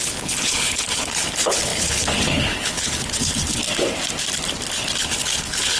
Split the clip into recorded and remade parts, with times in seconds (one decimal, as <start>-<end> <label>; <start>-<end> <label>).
0.0-3.6 remade; 3.6-5.0 recorded; 5.0-5.8 remade